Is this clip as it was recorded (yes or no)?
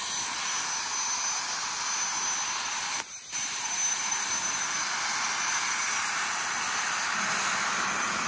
yes